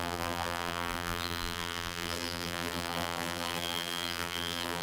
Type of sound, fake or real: fake